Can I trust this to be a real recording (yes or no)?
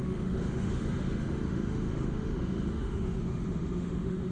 no